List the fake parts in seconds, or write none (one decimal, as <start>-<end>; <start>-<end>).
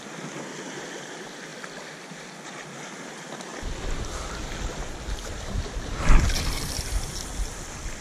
0.0-8.0